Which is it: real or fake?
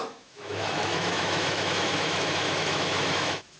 fake